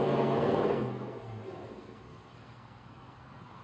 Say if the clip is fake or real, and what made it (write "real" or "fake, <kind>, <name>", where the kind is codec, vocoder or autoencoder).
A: fake, codec, SNAC